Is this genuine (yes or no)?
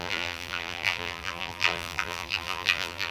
no